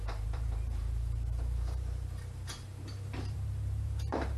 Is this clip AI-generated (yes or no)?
yes